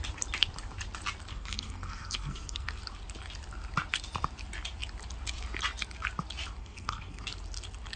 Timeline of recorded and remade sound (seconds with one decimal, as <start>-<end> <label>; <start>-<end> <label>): 0.0-1.3 recorded; 1.3-2.8 remade; 2.8-6.6 recorded; 6.6-7.2 remade; 7.2-8.0 recorded